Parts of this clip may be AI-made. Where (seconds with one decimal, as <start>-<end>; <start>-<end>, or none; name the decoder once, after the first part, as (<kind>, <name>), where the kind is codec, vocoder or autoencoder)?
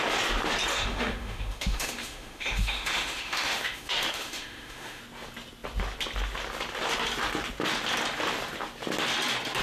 0.7-5.0 (autoencoder, DAC-VAE)